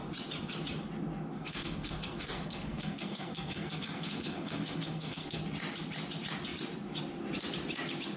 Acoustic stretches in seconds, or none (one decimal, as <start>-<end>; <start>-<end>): 0.0-1.3; 5.4-8.2